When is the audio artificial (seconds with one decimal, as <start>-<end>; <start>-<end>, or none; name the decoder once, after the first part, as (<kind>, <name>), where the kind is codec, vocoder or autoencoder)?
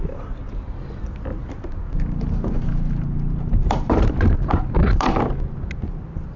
1.4-5.2 (vocoder, BigVGAN v2)